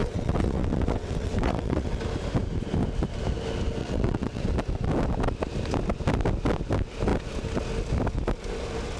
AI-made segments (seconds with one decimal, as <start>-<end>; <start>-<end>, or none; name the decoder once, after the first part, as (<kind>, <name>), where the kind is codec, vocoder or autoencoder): 0.0-2.0 (vocoder, WaveNeXt); 3.8-4.4

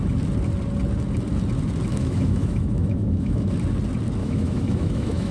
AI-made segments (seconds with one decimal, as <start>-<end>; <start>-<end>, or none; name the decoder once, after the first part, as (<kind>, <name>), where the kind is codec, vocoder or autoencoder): 1.9-3.5 (autoencoder, DAC-VAE); 4.2-5.3

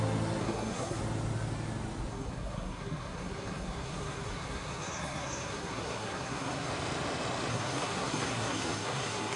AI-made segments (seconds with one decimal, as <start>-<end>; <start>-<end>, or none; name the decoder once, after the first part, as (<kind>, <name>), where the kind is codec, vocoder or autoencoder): 0.4-1.0 (codec, SNAC); 2.1-6.7; 7.5-9.4

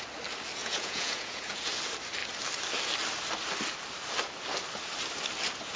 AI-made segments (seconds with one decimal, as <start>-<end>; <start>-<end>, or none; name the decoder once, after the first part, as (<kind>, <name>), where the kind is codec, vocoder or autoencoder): 0.6-1.7 (vocoder, Vocos)

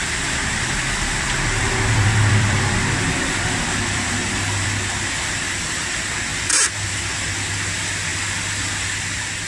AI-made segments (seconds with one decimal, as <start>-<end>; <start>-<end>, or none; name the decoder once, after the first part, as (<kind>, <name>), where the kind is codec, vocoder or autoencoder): 0.0-4.7 (vocoder, BigVGAN v2)